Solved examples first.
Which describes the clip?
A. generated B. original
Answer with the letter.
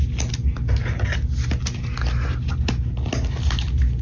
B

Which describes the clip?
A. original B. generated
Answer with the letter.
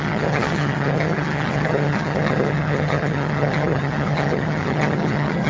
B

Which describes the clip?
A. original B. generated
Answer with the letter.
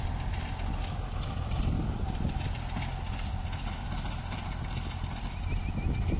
A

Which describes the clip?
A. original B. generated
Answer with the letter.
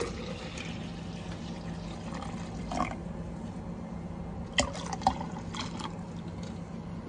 A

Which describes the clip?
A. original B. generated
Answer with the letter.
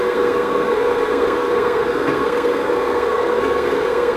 B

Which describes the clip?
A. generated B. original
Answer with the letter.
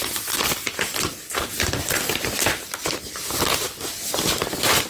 A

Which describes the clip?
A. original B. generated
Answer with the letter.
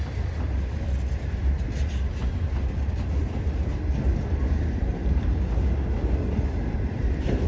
A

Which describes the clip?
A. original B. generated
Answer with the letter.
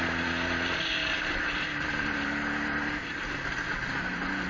A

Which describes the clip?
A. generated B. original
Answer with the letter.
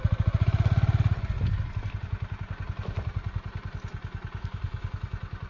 B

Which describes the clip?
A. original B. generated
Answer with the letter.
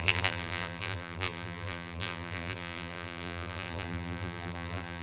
B